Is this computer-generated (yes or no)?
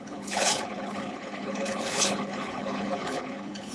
yes